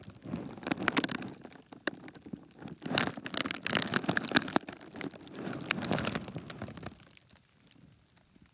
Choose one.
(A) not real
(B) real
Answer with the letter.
B